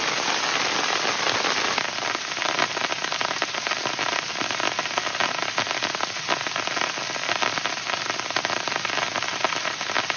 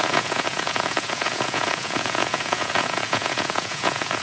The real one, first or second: first